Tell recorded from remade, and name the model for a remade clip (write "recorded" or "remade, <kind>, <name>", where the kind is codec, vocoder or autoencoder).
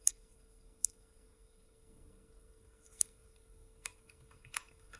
remade, codec, SNAC